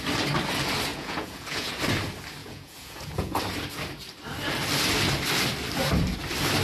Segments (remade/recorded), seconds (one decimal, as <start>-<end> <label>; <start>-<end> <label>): 0.0-0.9 recorded; 0.9-1.7 remade; 1.7-2.4 recorded; 2.4-3.4 remade; 3.4-6.6 recorded